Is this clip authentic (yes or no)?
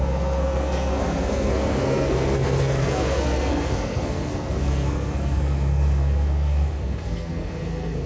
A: no